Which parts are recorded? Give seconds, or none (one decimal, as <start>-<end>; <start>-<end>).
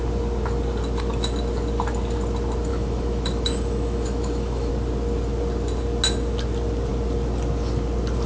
0.0-2.7; 4.7-8.3